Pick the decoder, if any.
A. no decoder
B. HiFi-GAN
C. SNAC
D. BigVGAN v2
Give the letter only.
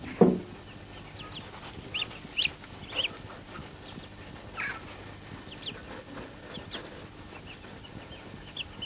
A